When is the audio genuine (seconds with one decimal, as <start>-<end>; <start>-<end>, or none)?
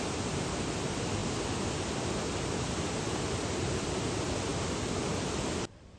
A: 0.0-6.0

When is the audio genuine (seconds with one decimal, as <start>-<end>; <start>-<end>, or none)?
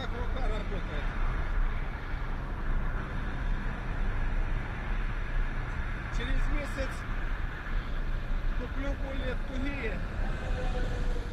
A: 0.0-11.3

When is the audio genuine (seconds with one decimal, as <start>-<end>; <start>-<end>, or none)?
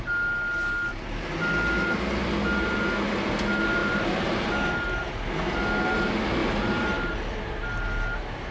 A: 0.0-3.8; 4.5-6.4; 7.5-8.5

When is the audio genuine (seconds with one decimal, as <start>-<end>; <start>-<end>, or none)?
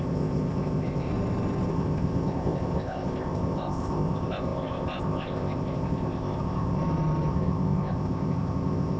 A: 1.1-1.7; 6.8-7.3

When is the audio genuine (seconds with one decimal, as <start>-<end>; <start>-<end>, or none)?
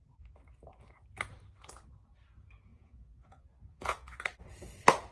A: 0.0-2.7; 4.2-5.1